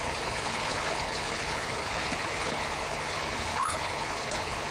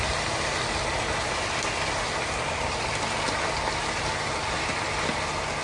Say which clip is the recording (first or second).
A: second